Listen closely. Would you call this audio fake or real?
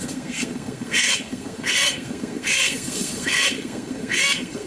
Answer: fake